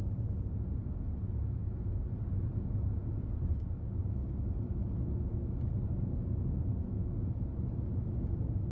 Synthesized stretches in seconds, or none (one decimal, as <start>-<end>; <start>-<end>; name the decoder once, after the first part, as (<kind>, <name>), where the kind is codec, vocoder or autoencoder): none

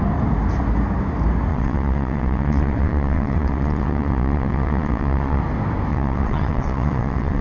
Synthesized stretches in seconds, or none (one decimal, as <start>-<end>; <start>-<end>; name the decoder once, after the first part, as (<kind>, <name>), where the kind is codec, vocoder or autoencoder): 1.5-5.4 (vocoder, WaveNeXt); 5.9-7.4

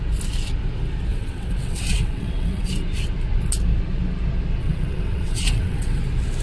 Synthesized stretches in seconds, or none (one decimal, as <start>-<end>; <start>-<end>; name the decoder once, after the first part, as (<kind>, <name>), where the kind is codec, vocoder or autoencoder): 1.1-2.7 (vocoder, WaveNeXt); 4.6-6.0

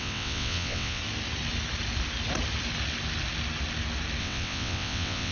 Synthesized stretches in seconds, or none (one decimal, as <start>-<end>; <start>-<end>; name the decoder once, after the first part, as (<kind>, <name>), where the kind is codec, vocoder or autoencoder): 0.0-1.0 (vocoder, WaveNeXt); 4.2-5.3